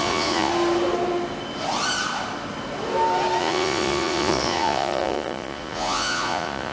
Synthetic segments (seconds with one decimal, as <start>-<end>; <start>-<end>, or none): 0.0-0.5; 3.4-6.7